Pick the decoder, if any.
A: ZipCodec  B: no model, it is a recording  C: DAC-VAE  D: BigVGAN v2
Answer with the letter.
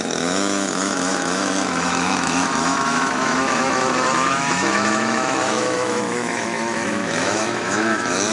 C